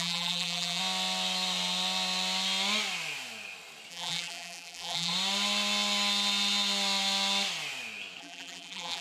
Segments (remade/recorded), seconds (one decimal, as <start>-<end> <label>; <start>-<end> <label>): 0.0-0.8 remade; 0.8-3.9 recorded; 3.9-5.1 remade; 5.1-8.2 recorded; 8.2-9.0 remade